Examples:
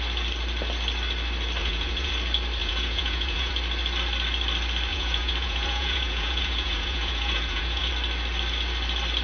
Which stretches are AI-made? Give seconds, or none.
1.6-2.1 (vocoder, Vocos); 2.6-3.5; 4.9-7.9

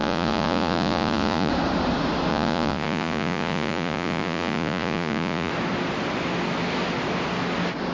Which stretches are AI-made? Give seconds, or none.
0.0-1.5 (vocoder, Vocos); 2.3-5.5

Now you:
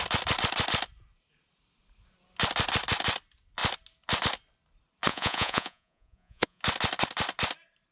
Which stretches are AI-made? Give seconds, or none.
5.1-6.6 (vocoder, Vocos)

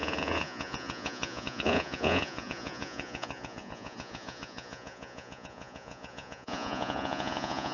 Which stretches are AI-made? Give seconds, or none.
0.0-7.7 (vocoder, Vocos)

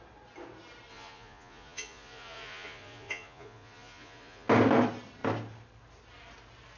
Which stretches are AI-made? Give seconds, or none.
0.9-4.5 (vocoder, Vocos)